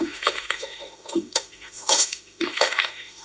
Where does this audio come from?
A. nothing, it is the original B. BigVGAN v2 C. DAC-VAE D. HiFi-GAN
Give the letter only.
C